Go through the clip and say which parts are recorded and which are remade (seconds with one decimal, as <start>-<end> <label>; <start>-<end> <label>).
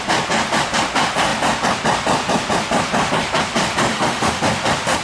0.0-3.9 recorded; 3.9-4.4 remade; 4.4-5.0 recorded